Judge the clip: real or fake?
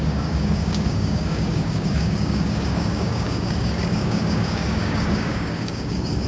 fake